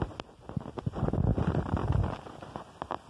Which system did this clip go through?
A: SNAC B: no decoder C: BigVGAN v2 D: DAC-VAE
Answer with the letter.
B